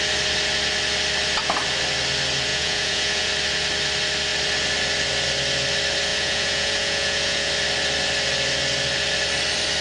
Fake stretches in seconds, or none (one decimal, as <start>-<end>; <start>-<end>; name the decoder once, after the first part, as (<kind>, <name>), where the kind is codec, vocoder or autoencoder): 2.5-3.3 (vocoder, Vocos); 6.1-7.5